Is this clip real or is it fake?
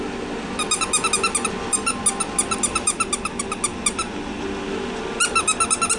real